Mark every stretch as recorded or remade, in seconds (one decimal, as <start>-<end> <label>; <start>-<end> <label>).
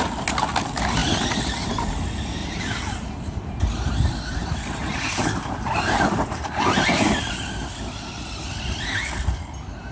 0.0-1.0 recorded; 1.0-1.9 remade; 1.9-2.4 recorded; 2.4-7.5 remade; 7.5-9.9 recorded